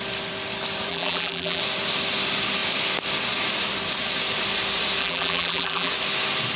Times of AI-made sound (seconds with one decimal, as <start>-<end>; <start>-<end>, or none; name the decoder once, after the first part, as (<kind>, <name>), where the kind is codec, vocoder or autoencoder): 0.9-1.6 (vocoder, BigVGAN v2); 5.0-5.9

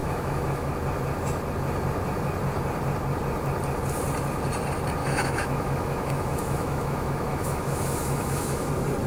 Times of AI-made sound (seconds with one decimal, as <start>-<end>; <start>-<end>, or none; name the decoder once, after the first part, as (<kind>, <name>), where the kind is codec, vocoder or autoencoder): 0.0-0.7 (autoencoder, DAC-VAE); 5.0-8.7

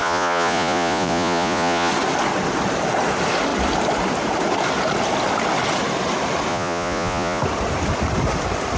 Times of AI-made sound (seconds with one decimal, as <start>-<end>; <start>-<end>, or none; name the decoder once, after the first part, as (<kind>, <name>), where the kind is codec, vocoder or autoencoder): 0.0-1.9 (vocoder, Vocos); 6.5-7.4

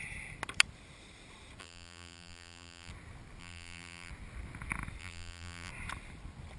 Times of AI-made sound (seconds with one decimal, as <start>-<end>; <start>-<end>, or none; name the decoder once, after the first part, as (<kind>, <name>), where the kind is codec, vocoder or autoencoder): 1.6-2.9 (vocoder, BigVGAN v2); 3.4-4.1; 5.0-5.7

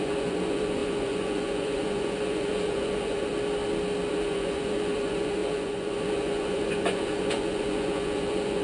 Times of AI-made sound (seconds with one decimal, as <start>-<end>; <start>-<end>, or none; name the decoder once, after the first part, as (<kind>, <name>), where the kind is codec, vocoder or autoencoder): 0.0-3.3 (vocoder, Vocos); 4.1-8.6

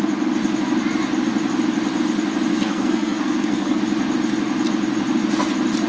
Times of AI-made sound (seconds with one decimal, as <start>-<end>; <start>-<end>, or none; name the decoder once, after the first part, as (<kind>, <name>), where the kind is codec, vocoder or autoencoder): 2.5-3.8 (codec, SNAC)

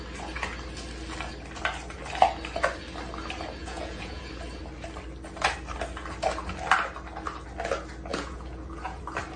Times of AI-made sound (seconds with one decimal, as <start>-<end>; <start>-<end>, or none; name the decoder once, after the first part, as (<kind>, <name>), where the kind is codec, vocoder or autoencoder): 3.6-4.3 (vocoder, Vocos); 8.1-9.0